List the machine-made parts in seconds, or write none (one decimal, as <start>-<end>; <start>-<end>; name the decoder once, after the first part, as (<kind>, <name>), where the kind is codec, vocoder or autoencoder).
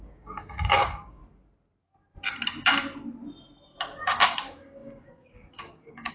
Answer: 0.0-1.2 (codec, DAC); 4.0-6.1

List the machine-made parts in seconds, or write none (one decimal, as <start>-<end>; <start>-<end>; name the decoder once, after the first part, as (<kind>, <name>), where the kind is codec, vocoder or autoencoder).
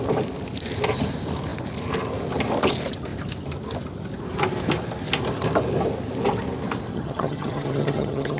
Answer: 6.9-8.4 (vocoder, HiFi-GAN)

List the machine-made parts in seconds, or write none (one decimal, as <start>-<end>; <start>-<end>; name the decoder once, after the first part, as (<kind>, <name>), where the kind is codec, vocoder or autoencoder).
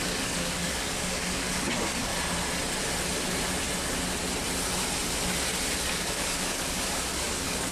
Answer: 0.0-2.1 (codec, DAC); 5.9-7.7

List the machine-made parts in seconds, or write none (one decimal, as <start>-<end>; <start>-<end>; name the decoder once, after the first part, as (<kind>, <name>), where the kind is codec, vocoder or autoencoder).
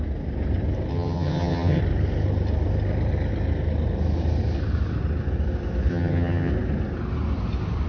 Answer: 0.9-1.8 (vocoder, HiFi-GAN); 5.9-6.5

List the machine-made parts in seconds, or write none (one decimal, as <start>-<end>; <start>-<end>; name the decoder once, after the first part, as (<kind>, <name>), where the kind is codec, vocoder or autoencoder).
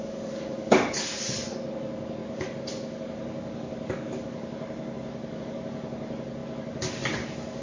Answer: 0.0-7.6 (codec, DAC)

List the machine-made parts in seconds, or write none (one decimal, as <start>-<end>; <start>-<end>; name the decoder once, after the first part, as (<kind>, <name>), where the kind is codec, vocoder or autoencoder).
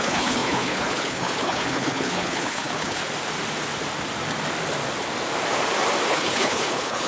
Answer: 0.0-3.0 (codec, HILCodec); 6.1-7.1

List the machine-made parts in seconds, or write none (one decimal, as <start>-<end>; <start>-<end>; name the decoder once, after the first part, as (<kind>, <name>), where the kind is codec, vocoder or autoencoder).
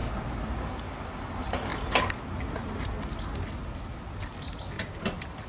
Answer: 0.6-1.7 (vocoder, BigVGAN v2); 5.0-5.5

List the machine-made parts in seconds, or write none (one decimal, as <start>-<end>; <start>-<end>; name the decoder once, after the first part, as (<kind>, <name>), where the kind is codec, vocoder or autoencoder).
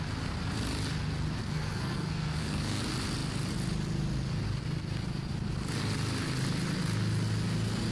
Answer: 1.4-2.8 (codec, SNAC)